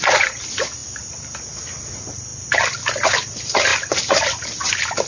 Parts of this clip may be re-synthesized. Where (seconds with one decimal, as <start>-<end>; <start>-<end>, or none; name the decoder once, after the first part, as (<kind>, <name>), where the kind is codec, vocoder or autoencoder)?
none